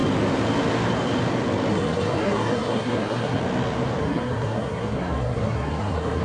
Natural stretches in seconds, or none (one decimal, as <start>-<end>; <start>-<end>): 0.0-1.7; 3.4-4.0